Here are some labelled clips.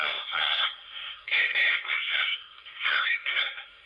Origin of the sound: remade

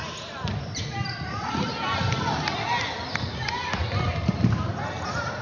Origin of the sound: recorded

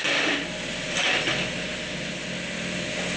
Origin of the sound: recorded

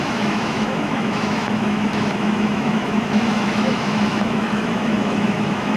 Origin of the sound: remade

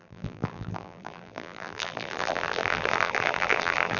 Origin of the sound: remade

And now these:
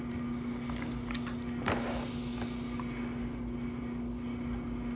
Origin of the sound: recorded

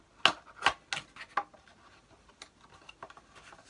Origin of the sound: recorded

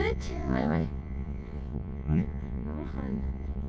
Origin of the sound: remade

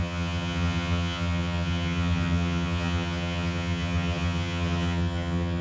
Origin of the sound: remade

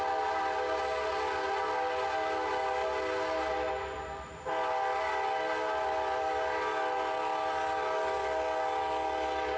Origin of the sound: recorded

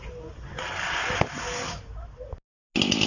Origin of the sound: recorded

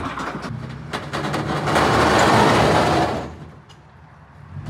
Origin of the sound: recorded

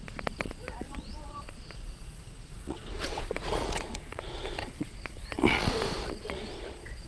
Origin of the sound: remade